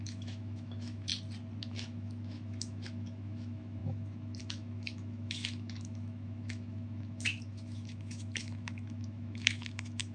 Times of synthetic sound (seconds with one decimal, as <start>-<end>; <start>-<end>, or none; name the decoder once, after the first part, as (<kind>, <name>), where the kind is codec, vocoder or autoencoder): 0.0-1.1 (autoencoder, DAC-VAE); 1.6-10.1